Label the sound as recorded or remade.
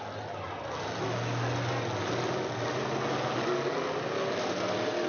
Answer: recorded